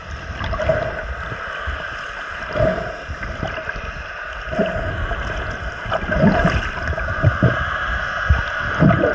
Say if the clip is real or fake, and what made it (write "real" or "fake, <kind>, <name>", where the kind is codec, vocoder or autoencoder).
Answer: real